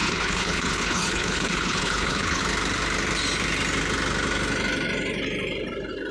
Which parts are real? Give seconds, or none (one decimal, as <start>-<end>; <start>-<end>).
2.4-6.1